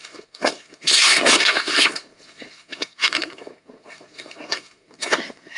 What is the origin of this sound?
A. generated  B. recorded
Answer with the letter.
A